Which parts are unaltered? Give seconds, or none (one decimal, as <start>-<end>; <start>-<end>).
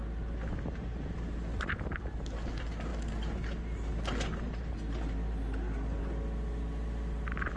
0.0-7.6